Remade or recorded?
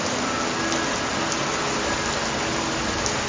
recorded